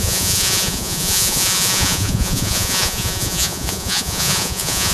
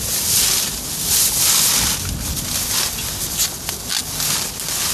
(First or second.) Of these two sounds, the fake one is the first